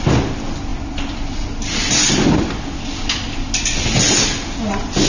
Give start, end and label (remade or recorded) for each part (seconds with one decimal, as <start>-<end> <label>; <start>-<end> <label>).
0.0-5.1 recorded